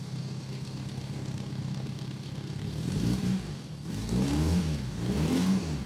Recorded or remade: remade